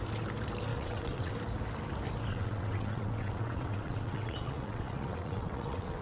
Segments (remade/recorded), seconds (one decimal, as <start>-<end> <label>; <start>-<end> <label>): 0.0-0.7 recorded; 0.7-1.3 remade; 1.3-2.3 recorded; 2.3-6.0 remade